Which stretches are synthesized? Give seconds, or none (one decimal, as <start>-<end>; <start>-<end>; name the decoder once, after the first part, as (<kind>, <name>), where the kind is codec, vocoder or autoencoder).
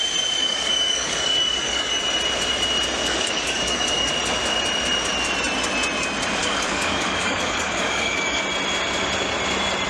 0.4-2.0 (codec, DAC); 3.0-4.1; 6.4-8.4